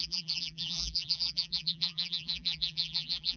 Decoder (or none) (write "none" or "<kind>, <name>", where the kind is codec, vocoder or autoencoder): vocoder, BigVGAN v2